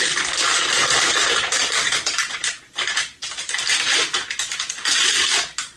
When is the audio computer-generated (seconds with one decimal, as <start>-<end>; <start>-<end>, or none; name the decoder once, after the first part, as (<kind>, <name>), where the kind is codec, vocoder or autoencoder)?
none